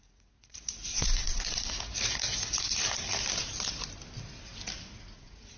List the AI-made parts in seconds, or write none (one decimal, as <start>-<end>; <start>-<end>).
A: 0.0-2.3; 4.9-5.6